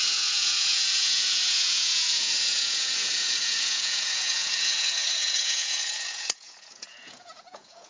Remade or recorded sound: remade